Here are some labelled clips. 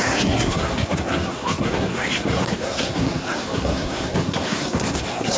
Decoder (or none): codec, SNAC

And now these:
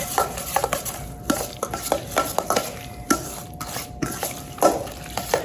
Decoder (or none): none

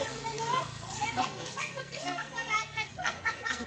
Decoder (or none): codec, SNAC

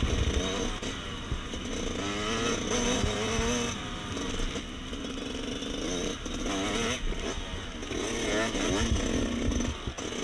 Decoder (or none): none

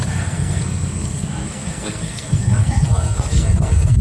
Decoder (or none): codec, SNAC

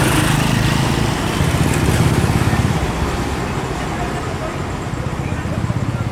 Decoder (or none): none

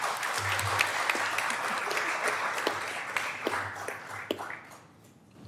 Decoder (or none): none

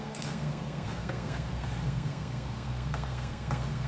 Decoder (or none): codec, SNAC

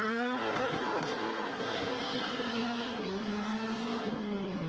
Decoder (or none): codec, SNAC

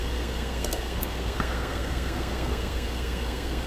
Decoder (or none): codec, SNAC